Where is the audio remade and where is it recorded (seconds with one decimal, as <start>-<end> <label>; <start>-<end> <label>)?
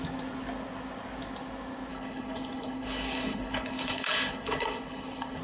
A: 0.0-1.9 recorded; 1.9-5.4 remade